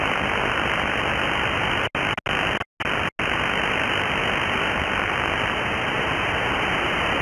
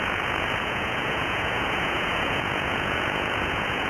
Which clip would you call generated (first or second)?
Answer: second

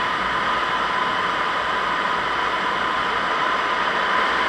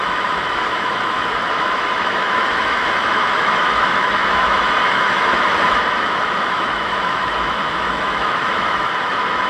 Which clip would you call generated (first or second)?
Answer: second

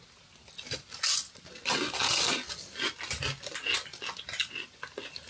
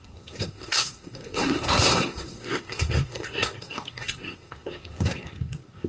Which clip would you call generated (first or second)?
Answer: second